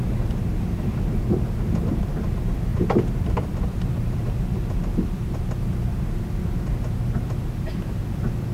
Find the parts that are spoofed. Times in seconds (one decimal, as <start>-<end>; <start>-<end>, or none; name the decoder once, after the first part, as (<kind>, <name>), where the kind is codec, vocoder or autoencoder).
0.0-8.5 (vocoder, BigVGAN v2)